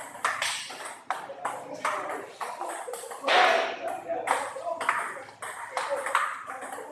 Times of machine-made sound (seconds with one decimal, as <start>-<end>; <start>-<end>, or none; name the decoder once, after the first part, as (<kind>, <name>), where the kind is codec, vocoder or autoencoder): none